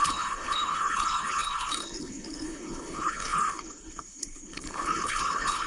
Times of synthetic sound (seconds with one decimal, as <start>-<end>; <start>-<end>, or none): 0.0-5.7